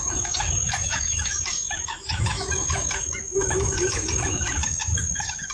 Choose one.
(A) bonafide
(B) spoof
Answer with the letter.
B